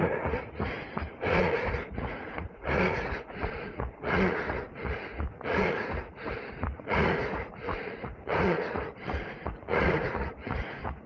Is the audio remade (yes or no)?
yes